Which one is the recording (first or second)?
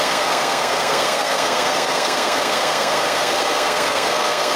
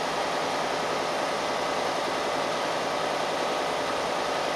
second